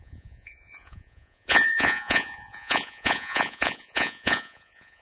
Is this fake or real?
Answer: fake